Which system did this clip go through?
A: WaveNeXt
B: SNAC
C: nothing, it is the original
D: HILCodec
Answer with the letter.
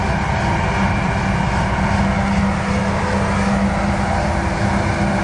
C